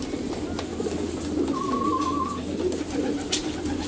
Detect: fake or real real